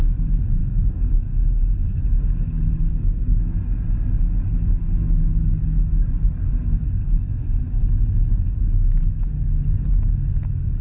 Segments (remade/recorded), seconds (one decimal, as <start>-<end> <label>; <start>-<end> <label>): 0.0-0.6 recorded; 0.6-1.5 remade; 1.5-2.9 recorded; 2.9-3.4 remade; 3.4-7.0 recorded; 7.0-7.6 remade; 7.6-10.8 recorded